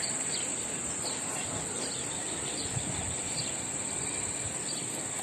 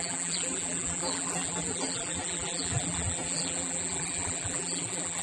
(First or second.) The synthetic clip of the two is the second